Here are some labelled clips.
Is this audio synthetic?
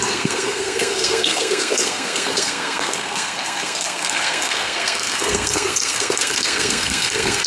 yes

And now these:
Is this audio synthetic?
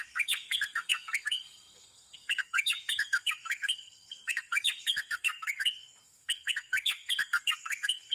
yes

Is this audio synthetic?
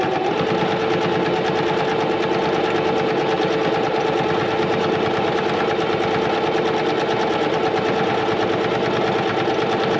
no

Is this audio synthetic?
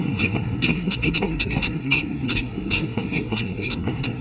yes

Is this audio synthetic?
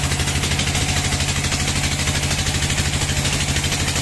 no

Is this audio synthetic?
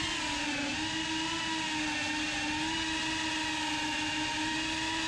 no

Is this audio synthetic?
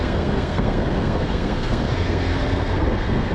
yes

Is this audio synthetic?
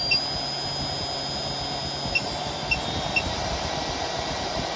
no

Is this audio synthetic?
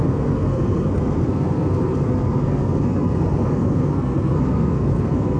yes